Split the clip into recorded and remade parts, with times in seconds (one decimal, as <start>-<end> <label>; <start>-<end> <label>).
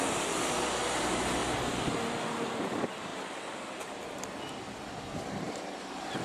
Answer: 0.0-6.2 recorded